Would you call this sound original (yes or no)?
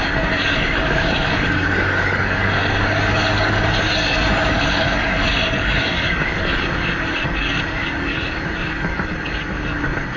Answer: no